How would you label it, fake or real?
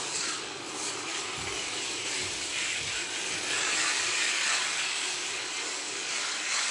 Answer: fake